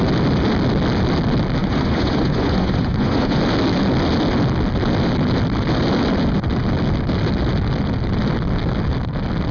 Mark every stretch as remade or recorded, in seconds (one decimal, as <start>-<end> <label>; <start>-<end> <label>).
0.0-1.6 recorded; 1.6-3.4 remade; 3.4-9.5 recorded